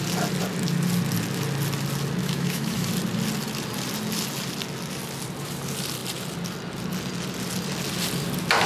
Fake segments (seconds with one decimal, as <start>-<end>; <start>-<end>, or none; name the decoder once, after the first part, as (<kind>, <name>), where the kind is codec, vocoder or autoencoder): 2.2-2.9 (autoencoder, DAC-VAE)